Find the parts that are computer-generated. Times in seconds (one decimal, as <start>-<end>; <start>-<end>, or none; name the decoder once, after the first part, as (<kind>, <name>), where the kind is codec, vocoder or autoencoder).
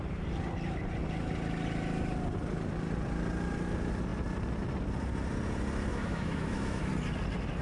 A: 5.9-6.9 (autoencoder, DAC-VAE)